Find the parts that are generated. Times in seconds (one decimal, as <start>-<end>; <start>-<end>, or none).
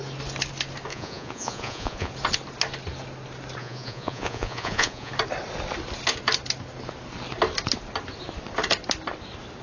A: 0.9-2.1; 3.6-5.1